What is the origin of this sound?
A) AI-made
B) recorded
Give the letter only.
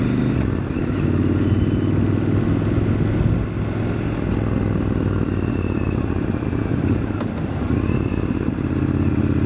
B